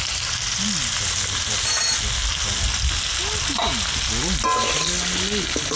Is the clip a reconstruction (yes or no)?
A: no